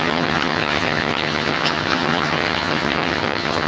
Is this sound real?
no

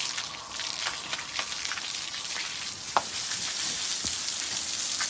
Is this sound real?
yes